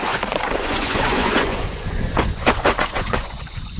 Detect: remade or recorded remade